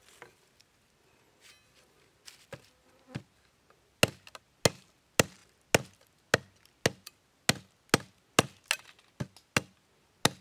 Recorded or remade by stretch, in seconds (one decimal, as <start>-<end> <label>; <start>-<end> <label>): 0.0-10.4 recorded